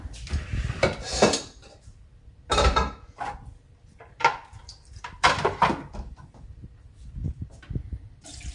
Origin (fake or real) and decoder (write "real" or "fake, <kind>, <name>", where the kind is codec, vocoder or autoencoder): fake, vocoder, BigVGAN v2